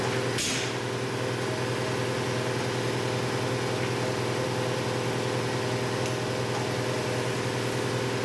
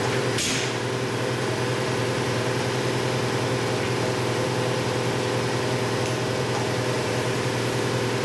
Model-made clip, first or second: second